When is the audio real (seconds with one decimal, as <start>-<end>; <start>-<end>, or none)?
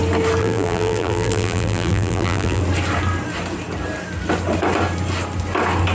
0.0-0.4; 2.6-5.9